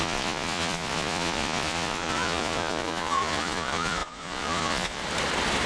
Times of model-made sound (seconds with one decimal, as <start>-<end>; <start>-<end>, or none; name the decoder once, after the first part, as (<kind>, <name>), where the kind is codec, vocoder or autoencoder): 0.0-5.0 (vocoder, Vocos)